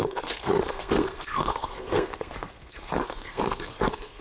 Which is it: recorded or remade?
remade